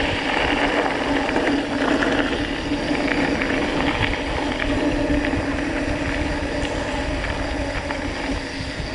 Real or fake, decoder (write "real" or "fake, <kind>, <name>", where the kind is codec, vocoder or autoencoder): real